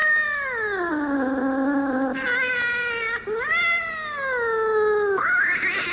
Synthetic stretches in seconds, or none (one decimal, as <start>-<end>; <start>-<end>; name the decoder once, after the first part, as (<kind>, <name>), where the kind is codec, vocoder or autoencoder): none